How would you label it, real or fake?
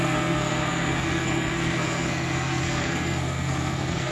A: fake